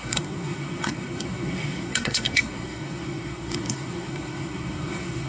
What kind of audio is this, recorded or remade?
remade